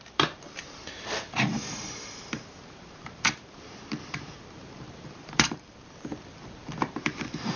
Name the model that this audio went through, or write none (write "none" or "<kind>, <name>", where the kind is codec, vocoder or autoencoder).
vocoder, BigVGAN v2